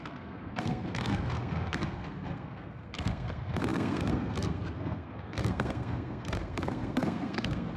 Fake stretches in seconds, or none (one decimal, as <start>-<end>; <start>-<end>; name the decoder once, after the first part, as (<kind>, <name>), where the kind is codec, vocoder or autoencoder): 0.0-7.8 (codec, SNAC)